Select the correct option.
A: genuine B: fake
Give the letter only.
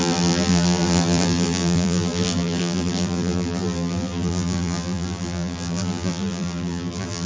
B